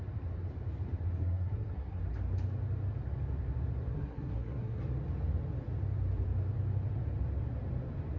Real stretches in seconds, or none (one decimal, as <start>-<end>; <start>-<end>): 0.0-1.2; 2.0-3.9; 4.8-8.2

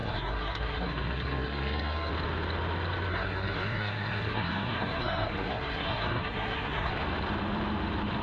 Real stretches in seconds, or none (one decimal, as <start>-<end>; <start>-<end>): 2.1-3.1; 6.9-8.2

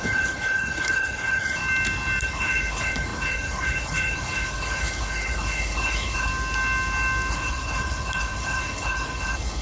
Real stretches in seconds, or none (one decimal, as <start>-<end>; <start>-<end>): 1.6-2.2; 6.3-7.3

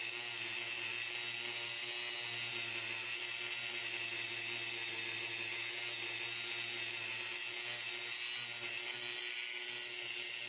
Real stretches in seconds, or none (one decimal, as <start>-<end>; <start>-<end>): 0.0-10.5

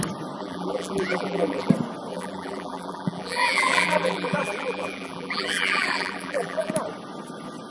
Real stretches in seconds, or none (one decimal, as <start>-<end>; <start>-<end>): 0.0-0.4; 1.7-2.1; 6.7-7.7